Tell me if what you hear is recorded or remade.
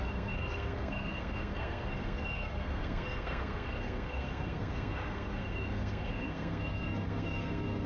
remade